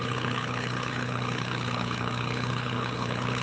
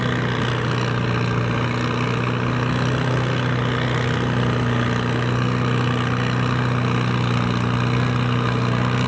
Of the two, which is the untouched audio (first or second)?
second